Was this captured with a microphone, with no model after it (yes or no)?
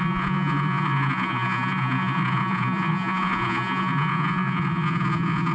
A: no